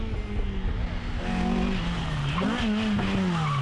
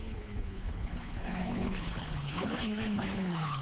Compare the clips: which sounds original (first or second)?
first